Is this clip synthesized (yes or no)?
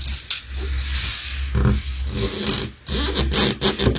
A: no